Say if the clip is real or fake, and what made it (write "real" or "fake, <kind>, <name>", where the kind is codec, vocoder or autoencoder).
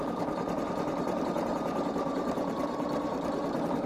fake, vocoder, BigVGAN v2